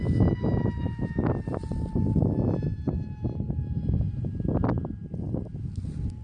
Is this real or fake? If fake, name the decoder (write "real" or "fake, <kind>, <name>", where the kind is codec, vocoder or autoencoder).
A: real